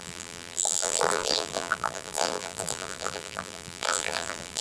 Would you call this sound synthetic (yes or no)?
yes